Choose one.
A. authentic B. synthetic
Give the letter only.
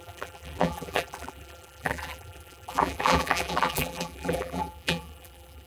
B